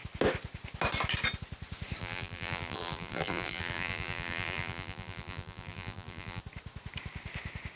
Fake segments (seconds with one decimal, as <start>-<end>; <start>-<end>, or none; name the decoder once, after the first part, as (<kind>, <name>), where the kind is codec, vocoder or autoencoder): 2.0-6.4 (vocoder, BigVGAN v2)